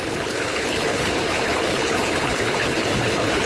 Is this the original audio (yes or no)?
no